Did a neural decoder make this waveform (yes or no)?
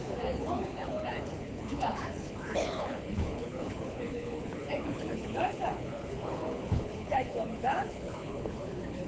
yes